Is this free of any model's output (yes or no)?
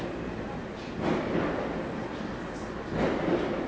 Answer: yes